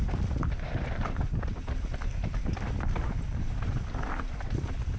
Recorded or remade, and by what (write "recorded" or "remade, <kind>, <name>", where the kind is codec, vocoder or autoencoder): remade, vocoder, BigVGAN v2